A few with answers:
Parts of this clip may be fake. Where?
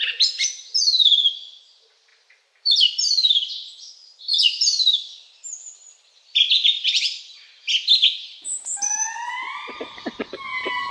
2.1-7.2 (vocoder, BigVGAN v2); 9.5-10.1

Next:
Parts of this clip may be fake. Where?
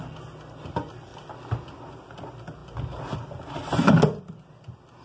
none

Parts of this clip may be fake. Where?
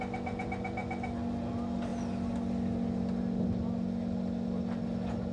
none